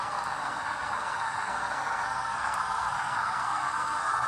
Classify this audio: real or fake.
fake